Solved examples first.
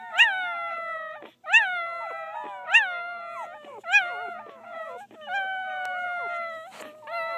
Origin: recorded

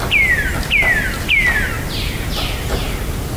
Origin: recorded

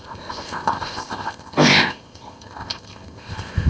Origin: remade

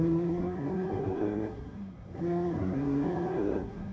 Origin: remade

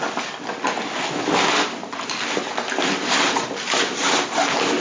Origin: recorded